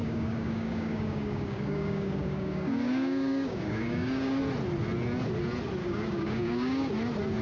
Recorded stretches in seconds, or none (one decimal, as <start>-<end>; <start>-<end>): 4.4-5.8; 6.9-7.4